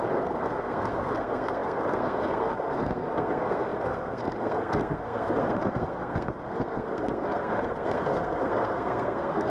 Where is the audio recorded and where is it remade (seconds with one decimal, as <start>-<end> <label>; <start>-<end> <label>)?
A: 0.0-9.5 remade